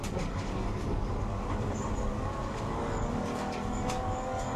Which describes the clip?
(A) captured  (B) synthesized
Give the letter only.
B